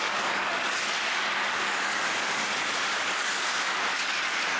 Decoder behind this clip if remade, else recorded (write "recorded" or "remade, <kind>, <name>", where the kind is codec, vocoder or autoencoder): remade, codec, DAC